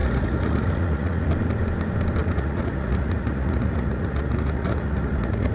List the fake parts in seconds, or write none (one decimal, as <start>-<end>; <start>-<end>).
0.0-1.3; 2.2-5.5